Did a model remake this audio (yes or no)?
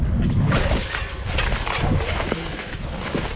no